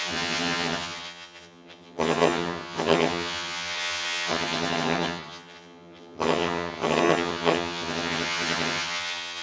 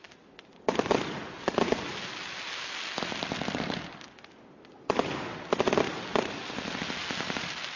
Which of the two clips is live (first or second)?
second